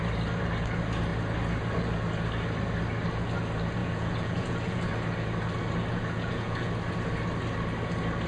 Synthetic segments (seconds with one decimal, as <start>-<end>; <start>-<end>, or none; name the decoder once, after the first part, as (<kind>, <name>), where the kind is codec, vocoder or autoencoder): 3.8-4.9 (vocoder, Vocos); 5.9-6.7